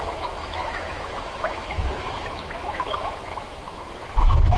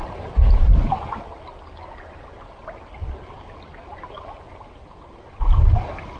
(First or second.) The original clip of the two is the second